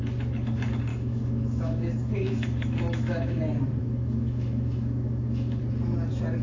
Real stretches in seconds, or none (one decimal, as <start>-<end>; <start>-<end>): 0.0-0.9; 3.4-3.8; 5.6-6.4